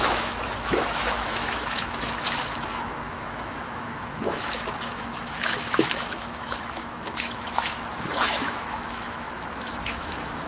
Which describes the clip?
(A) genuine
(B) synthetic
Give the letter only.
B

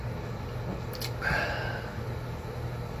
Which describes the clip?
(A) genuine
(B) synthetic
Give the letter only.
A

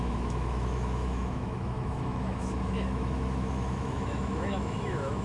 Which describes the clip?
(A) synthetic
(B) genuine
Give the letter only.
A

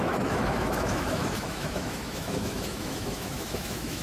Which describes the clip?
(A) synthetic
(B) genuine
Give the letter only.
A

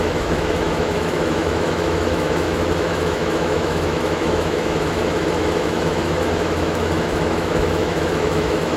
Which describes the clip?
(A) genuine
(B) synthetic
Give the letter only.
B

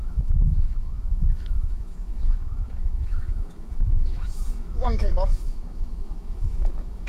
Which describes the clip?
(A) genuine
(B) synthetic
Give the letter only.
B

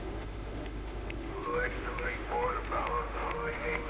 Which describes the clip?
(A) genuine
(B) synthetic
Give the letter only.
B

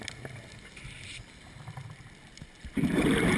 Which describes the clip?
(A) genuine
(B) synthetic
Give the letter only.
A